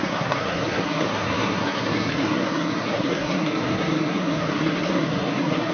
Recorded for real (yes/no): no